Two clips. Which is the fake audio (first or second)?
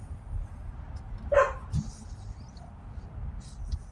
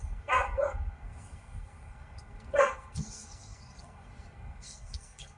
second